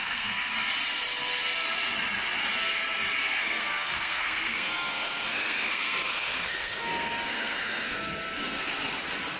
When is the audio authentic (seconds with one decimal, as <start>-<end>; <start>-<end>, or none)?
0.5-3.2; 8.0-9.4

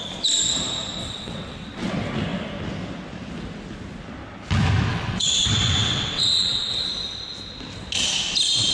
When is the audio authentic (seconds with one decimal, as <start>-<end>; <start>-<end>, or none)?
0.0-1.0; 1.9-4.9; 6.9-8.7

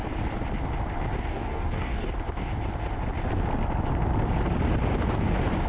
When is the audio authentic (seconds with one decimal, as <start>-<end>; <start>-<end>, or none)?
0.0-1.3; 2.1-5.7

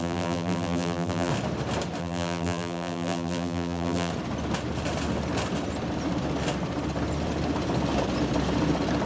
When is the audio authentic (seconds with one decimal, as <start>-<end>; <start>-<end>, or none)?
1.3-2.0; 4.1-9.1

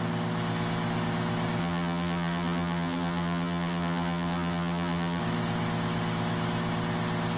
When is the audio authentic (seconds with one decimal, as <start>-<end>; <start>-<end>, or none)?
0.0-1.6; 5.2-7.4